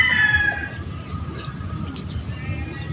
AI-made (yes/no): no